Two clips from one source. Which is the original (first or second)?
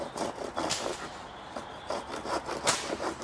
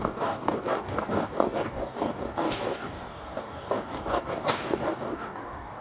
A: first